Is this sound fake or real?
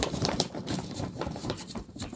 fake